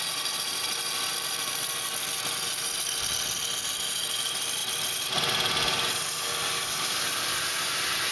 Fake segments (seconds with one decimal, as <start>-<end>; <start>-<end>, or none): none